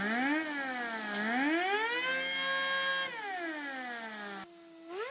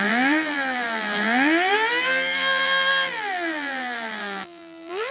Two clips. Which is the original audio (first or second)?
first